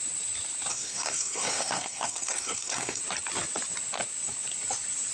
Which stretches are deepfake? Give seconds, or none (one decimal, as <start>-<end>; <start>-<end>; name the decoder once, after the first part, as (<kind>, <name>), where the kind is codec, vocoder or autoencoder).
0.7-3.0 (codec, SNAC)